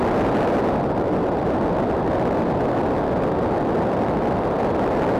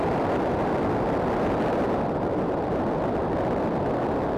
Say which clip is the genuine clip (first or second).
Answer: first